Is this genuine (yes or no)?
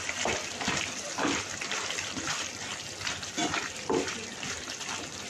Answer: no